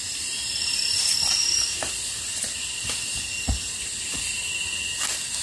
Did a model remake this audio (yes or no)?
no